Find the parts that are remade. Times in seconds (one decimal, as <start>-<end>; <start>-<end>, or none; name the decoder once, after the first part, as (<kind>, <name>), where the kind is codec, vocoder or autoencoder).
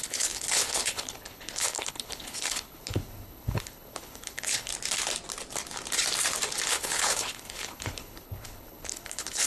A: 0.0-4.7 (codec, HILCodec); 6.7-9.5